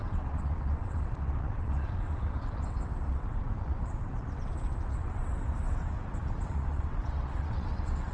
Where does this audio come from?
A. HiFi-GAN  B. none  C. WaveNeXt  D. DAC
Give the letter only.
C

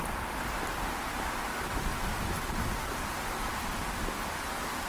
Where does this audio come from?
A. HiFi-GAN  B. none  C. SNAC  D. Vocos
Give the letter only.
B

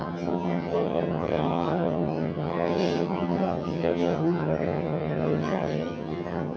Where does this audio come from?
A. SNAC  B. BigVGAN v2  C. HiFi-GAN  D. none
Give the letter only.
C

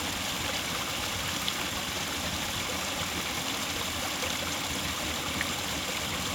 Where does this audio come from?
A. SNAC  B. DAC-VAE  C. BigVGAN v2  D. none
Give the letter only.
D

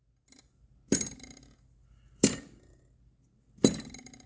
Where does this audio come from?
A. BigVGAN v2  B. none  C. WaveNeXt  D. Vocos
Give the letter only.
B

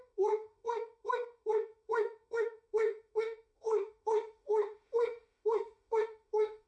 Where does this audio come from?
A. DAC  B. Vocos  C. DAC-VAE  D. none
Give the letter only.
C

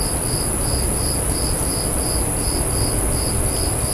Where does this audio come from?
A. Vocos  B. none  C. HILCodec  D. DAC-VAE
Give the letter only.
B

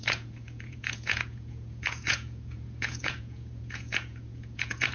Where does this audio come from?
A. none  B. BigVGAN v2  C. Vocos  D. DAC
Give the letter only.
C